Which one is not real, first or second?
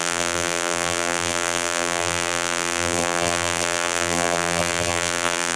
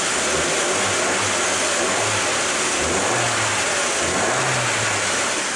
first